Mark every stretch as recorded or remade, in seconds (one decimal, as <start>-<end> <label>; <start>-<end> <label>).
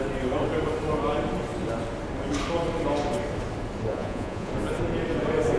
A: 0.0-3.9 recorded; 3.9-4.5 remade; 4.5-5.6 recorded